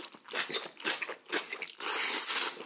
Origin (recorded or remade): recorded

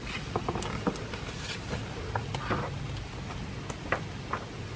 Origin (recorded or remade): recorded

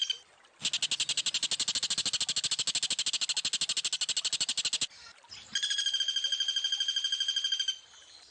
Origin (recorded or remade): recorded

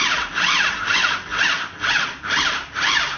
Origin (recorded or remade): recorded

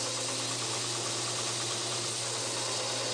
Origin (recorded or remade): recorded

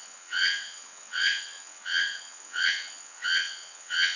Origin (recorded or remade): remade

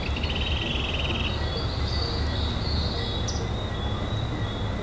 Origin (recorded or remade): recorded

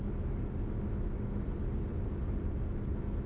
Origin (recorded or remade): recorded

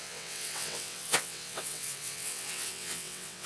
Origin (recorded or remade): remade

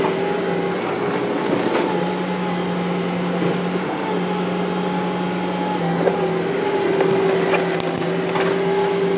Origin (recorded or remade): recorded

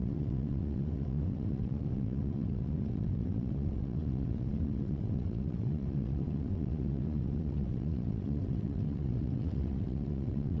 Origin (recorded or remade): remade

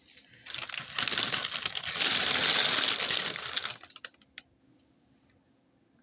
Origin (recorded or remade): recorded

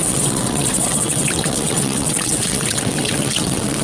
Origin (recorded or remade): remade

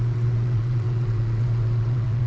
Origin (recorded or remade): remade